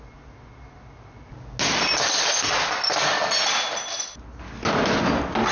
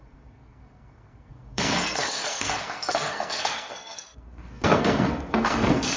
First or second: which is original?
first